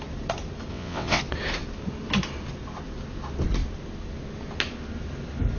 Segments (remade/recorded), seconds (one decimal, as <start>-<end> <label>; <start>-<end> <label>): 0.0-0.7 recorded; 0.7-1.2 remade; 1.2-5.6 recorded